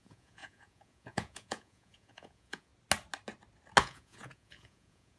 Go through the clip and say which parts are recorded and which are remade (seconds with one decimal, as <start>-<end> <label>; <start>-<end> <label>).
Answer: 0.0-2.7 remade; 2.7-3.8 recorded; 3.8-5.2 remade